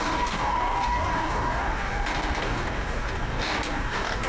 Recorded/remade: remade